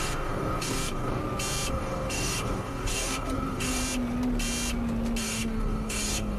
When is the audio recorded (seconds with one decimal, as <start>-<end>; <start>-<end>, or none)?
1.2-1.7; 3.8-5.2